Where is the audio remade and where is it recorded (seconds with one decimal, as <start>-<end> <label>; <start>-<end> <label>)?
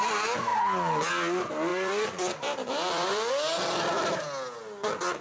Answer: 0.0-1.7 recorded; 1.7-3.3 remade; 3.3-5.2 recorded